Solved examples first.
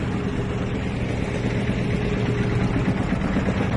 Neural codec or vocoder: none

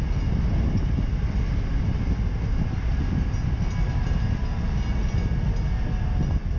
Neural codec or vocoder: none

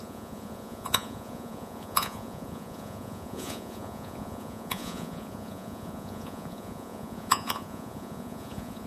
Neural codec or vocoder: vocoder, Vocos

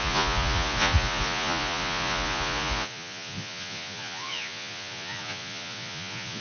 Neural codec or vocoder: vocoder, Vocos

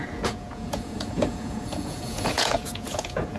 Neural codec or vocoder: vocoder, Vocos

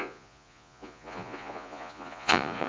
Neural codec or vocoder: vocoder, Vocos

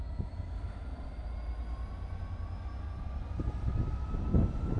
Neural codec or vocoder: none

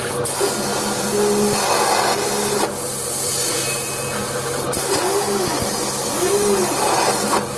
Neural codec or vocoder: none